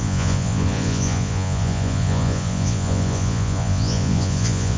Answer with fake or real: fake